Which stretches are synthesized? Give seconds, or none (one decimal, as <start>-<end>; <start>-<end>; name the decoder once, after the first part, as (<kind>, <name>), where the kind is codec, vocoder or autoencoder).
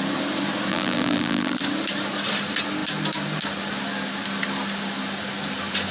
0.7-1.6 (vocoder, BigVGAN v2)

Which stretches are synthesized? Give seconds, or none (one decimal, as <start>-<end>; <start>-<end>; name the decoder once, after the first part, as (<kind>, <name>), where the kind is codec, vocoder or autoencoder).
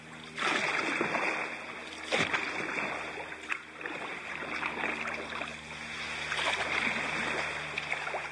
none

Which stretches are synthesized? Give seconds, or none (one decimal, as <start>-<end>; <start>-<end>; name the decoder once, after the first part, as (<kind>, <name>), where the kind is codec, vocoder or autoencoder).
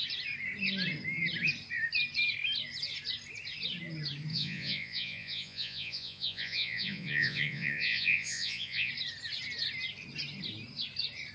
4.3-8.9 (vocoder, Vocos)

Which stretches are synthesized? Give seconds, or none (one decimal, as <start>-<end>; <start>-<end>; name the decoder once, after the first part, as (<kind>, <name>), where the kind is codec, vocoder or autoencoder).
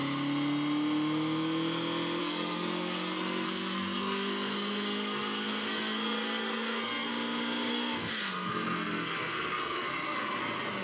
2.2-7.1 (codec, SNAC); 7.7-10.4